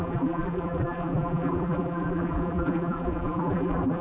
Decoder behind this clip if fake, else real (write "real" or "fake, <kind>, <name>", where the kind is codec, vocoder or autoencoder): fake, vocoder, BigVGAN v2